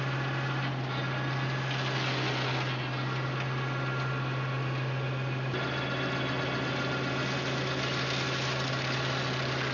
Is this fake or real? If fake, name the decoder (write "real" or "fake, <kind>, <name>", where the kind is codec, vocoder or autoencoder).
real